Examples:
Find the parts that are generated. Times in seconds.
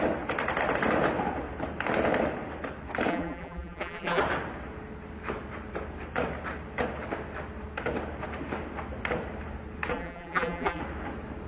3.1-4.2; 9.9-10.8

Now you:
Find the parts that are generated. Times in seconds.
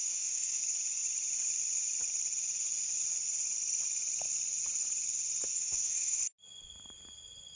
0.0-0.6; 5.5-6.2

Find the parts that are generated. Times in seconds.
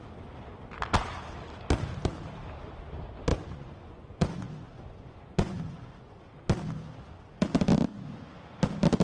3.3-6.2; 7.9-8.6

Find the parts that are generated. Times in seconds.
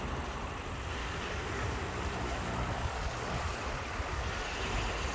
1.0-3.3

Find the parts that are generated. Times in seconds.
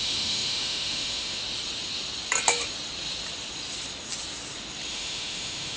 0.0-1.4; 4.9-5.8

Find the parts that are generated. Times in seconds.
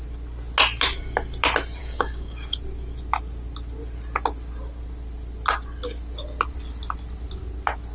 1.8-2.5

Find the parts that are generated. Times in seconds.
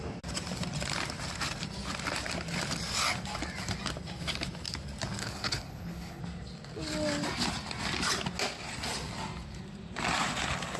5.2-6.2